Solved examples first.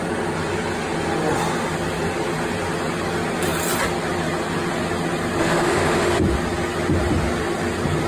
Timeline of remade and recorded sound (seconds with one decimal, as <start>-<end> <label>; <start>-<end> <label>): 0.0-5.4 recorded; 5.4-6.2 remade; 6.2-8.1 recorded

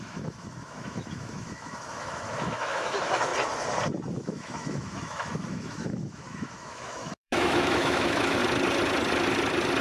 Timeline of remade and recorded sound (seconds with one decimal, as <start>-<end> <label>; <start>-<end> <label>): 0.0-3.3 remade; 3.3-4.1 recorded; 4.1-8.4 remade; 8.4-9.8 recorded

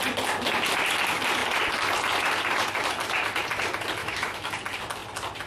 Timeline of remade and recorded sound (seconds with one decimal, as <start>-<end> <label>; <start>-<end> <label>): 0.0-4.0 recorded; 4.0-4.5 remade; 4.5-5.5 recorded